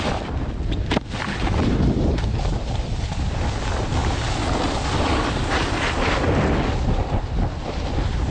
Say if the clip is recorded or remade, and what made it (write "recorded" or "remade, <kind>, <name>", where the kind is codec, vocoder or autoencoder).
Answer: recorded